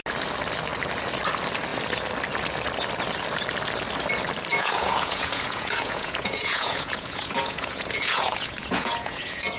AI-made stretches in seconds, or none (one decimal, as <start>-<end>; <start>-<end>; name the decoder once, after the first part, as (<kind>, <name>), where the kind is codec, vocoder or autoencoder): 4.5-9.6 (vocoder, Vocos)